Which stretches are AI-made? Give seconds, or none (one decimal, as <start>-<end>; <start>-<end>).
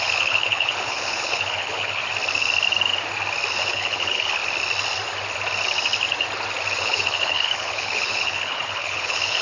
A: 0.0-2.0; 3.5-4.4; 6.8-9.4